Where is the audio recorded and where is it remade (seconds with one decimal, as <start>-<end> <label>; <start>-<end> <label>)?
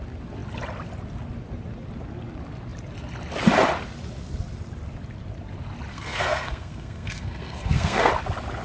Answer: 0.0-5.9 recorded; 5.9-8.1 remade; 8.1-8.6 recorded